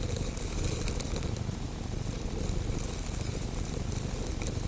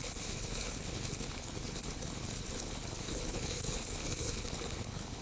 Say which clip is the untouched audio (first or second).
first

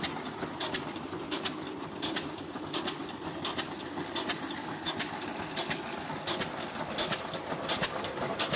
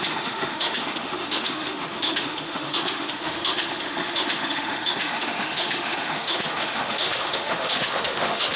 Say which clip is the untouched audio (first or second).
first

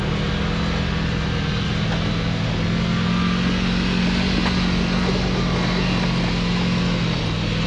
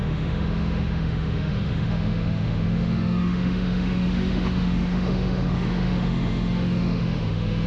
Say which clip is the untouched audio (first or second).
first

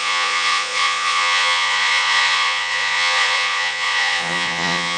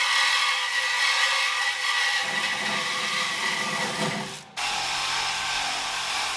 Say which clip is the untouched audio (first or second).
second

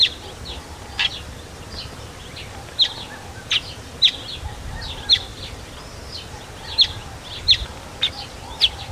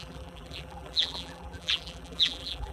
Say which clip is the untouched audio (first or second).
first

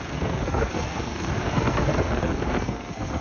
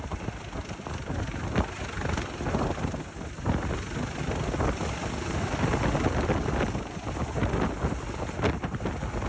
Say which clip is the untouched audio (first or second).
second